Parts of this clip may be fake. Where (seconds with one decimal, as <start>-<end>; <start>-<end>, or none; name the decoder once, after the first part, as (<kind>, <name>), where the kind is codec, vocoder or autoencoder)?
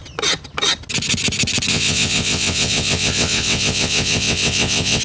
1.7-5.0 (vocoder, WaveNeXt)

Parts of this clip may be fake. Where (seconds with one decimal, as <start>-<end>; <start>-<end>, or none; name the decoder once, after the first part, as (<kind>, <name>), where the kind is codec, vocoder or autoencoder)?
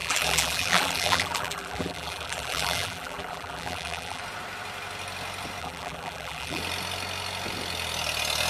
0.0-4.2 (vocoder, BigVGAN v2); 5.6-6.6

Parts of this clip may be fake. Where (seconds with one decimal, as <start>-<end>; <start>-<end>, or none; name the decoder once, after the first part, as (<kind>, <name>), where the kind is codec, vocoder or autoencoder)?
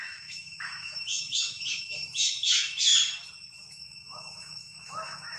0.0-2.9 (autoencoder, DAC-VAE); 3.7-5.4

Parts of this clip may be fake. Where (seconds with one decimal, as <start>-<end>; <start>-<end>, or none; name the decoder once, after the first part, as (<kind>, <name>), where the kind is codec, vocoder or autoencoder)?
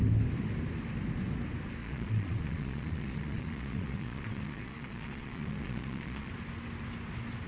1.8-6.3 (vocoder, Vocos)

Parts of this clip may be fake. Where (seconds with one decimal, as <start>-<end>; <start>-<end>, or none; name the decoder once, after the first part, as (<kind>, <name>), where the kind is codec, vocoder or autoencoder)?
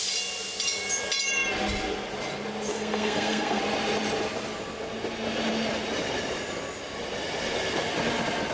2.7-3.6 (codec, SNAC)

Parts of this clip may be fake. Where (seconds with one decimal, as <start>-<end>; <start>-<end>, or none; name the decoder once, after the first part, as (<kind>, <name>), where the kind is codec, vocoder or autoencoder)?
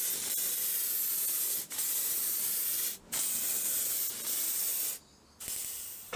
none